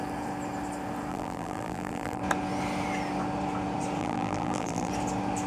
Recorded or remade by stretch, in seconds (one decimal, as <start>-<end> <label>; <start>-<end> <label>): 0.0-1.1 recorded; 1.1-2.2 remade; 2.2-4.0 recorded; 4.0-4.9 remade; 4.9-5.5 recorded